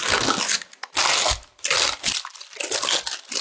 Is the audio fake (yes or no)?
no